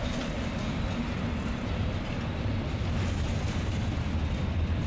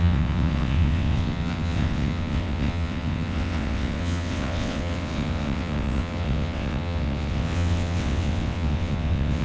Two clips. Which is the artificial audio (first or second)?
second